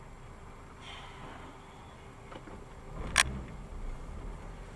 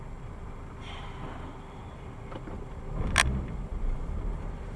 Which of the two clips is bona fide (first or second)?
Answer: first